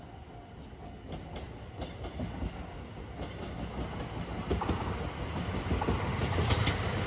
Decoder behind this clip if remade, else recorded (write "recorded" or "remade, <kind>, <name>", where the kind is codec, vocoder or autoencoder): recorded